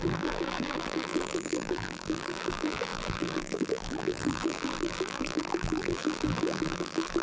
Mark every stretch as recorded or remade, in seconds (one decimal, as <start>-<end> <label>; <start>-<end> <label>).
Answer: 0.0-7.2 remade